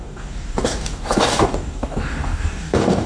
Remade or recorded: remade